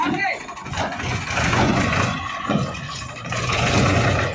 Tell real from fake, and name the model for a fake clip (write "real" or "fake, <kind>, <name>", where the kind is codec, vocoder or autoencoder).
fake, vocoder, Vocos